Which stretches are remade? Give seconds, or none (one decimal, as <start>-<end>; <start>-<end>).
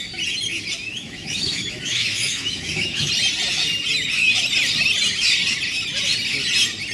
0.9-3.1